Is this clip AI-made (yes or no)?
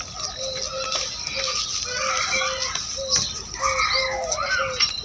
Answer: no